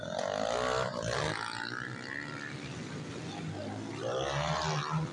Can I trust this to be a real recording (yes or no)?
yes